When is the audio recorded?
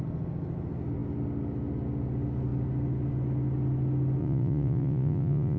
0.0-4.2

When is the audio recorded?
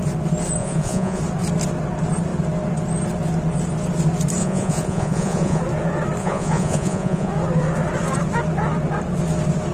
0.0-0.6; 1.2-4.4; 5.6-6.2; 7.3-9.7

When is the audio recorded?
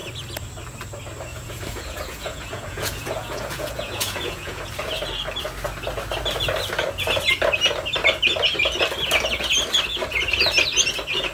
0.0-1.3; 4.7-11.3